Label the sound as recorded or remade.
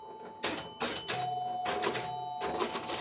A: recorded